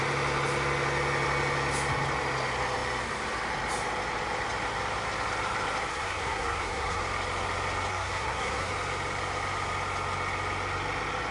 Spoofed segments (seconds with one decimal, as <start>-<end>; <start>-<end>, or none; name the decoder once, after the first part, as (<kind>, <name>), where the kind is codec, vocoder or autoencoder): 5.9-7.0 (codec, SNAC); 7.9-8.7